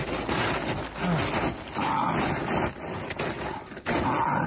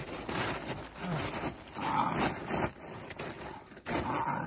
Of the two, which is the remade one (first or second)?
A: second